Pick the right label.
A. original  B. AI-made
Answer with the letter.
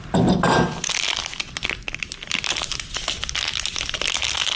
A